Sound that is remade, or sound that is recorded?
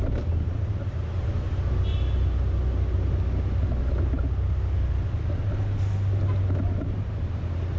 recorded